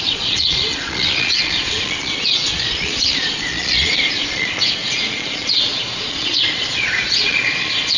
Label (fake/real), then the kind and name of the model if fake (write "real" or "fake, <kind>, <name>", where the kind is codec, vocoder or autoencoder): fake, vocoder, Vocos